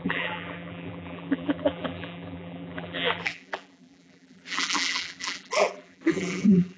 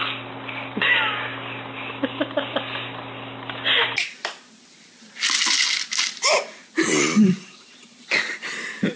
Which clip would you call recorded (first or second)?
second